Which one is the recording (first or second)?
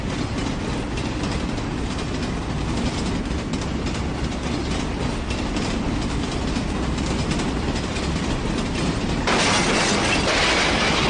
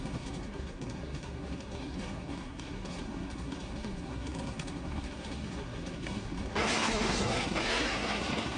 first